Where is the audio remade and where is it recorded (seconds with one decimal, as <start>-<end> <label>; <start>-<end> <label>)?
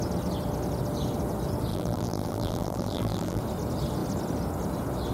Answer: 0.0-1.7 recorded; 1.7-3.4 remade; 3.4-5.1 recorded